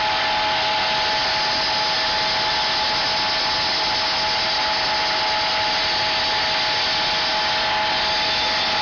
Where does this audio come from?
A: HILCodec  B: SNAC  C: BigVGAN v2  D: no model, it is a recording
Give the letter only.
D